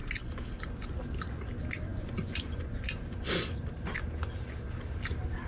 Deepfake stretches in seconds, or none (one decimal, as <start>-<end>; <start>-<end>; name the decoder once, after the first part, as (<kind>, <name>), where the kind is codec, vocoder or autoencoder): 1.9-3.0 (vocoder, Vocos)